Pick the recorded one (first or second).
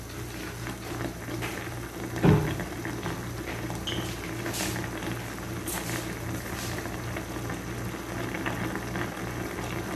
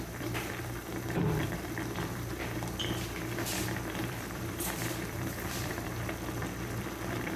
first